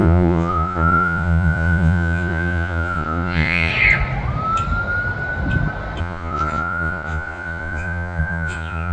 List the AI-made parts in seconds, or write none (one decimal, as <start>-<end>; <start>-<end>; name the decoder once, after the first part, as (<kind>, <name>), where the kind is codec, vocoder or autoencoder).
0.0-3.7 (vocoder, Vocos); 6.0-8.9